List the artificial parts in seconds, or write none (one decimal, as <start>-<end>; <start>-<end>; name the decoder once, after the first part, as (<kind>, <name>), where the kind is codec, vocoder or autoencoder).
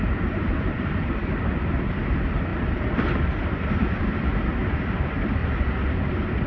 0.0-5.4 (vocoder, BigVGAN v2); 6.1-6.5